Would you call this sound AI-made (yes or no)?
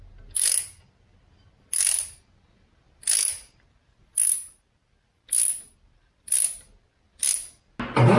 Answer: no